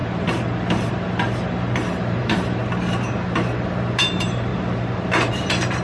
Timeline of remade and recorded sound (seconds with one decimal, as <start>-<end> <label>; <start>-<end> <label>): 0.0-2.6 remade; 2.6-4.0 recorded; 4.0-4.5 remade; 4.5-5.3 recorded; 5.3-5.8 remade